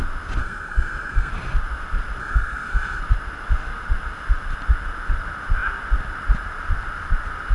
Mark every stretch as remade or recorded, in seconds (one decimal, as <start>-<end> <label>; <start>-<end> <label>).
0.0-0.4 recorded; 0.4-1.3 remade; 1.3-2.2 recorded; 2.2-3.0 remade; 3.0-7.5 recorded